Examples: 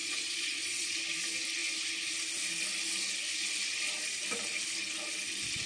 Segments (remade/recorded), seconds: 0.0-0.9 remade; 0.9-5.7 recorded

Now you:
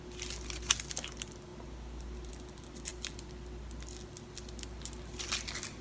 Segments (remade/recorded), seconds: 0.0-5.8 recorded